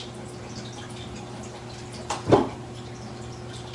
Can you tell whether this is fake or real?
real